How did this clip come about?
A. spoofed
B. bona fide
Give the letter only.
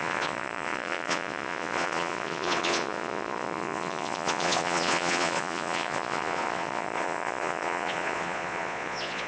A